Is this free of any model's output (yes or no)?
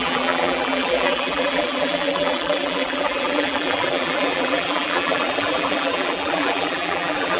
no